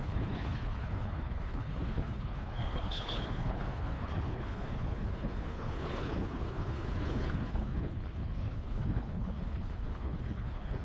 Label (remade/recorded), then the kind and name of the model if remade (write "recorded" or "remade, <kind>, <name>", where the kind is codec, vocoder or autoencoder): remade, codec, HILCodec